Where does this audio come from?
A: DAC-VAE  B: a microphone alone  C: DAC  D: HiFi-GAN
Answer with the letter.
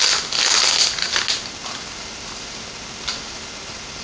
B